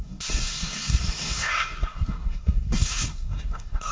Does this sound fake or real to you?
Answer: fake